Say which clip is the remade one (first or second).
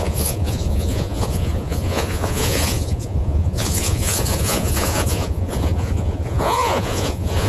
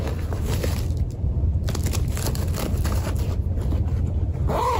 first